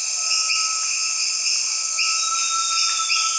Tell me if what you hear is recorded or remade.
recorded